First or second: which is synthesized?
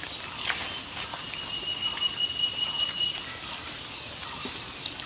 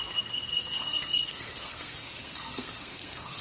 second